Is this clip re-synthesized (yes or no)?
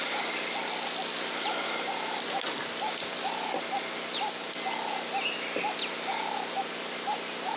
no